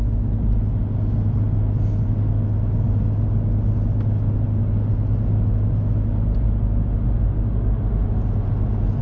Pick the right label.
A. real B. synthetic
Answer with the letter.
A